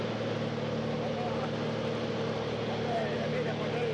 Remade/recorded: recorded